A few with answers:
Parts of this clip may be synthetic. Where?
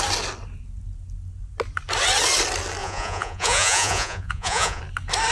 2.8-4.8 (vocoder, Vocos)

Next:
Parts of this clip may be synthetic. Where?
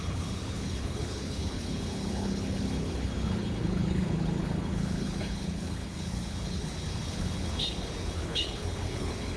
0.0-9.4 (codec, HILCodec)